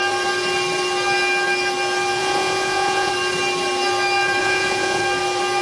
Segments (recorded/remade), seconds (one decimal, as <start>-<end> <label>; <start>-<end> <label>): 0.0-2.2 recorded; 2.2-3.1 remade; 3.1-4.4 recorded; 4.4-5.0 remade; 5.0-5.6 recorded